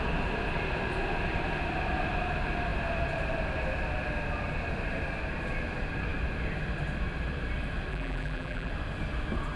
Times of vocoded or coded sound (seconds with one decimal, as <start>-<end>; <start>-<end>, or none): 7.9-8.7